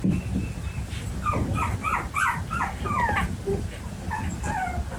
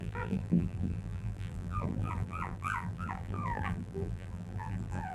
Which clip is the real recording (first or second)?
first